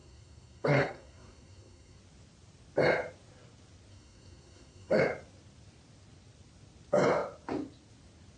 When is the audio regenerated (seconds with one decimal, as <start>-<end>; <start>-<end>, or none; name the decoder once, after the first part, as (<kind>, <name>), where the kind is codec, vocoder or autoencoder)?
0.0-2.0 (codec, SNAC); 3.9-5.0